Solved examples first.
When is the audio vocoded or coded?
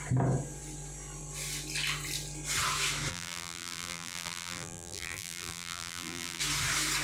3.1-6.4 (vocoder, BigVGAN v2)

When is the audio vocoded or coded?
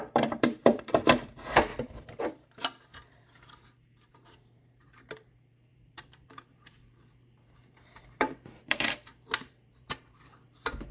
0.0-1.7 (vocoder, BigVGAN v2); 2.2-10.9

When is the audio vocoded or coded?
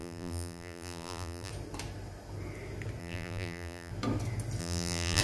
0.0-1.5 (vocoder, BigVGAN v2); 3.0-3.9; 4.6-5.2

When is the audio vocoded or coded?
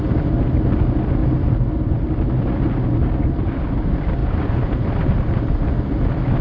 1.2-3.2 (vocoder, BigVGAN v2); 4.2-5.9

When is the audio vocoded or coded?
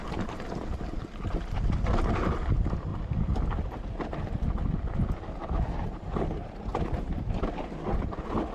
0.0-1.0 (vocoder, BigVGAN v2); 2.9-3.8; 6.7-8.5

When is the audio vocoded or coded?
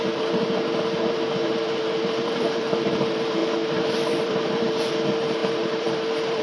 0.0-6.4 (vocoder, BigVGAN v2)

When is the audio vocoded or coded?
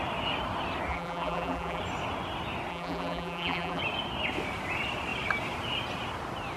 0.9-1.8 (vocoder, BigVGAN v2); 2.7-3.8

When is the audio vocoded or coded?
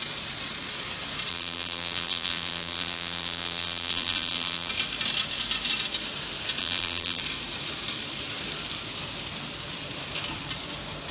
1.3-4.7 (vocoder, BigVGAN v2); 6.6-7.2